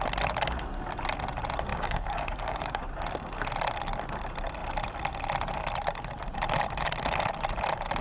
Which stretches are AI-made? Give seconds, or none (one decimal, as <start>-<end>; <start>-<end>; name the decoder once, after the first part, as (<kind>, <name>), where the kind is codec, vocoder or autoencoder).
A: 1.7-2.8 (codec, DAC)